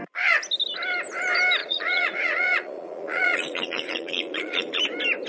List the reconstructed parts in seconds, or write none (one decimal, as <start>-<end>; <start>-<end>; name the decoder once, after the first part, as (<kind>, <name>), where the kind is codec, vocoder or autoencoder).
1.6-4.8 (vocoder, Vocos)